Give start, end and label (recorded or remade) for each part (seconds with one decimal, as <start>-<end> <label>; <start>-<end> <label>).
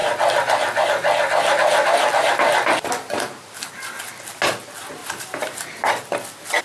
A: 0.0-5.0 recorded; 5.0-6.6 remade